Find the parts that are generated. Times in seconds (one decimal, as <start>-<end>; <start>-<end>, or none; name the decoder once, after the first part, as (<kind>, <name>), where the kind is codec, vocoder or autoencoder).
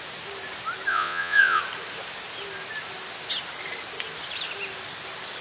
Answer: 0.9-1.6 (vocoder, Vocos)